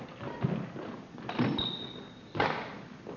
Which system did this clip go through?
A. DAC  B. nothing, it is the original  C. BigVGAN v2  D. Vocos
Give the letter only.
B